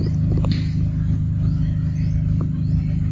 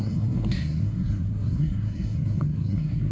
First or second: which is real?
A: first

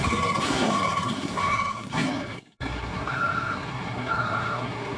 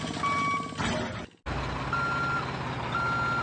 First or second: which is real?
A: second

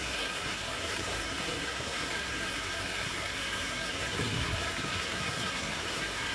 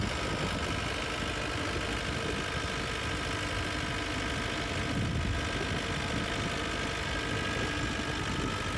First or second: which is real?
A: second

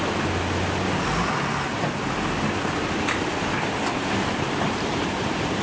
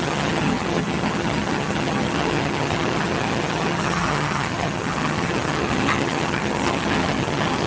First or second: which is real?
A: first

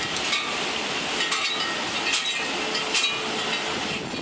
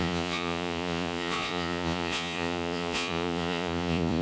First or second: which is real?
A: first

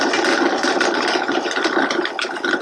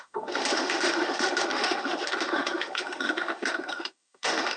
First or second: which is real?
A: first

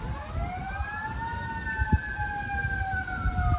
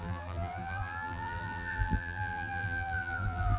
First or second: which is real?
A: first